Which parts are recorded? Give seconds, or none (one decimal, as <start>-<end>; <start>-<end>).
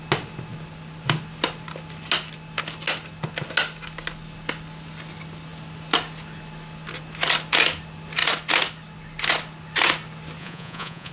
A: 0.0-10.4